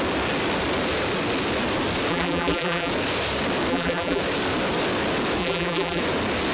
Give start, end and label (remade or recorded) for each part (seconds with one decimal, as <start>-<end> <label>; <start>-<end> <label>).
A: 0.0-2.1 recorded; 2.1-2.9 remade; 2.9-3.7 recorded; 3.7-4.2 remade; 4.2-5.4 recorded; 5.4-6.0 remade; 6.0-6.5 recorded